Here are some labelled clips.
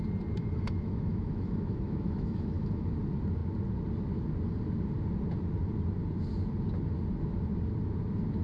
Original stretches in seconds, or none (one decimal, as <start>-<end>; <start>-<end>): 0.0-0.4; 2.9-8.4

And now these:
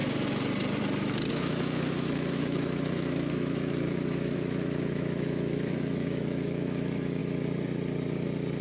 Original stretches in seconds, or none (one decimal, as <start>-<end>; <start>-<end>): 0.0-1.3; 7.2-8.6

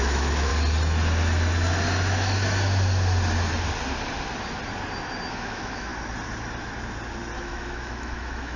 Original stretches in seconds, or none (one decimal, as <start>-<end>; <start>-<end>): 0.5-5.3; 5.9-7.4

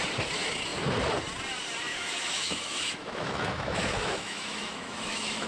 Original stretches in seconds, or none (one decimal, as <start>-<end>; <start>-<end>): 0.0-1.9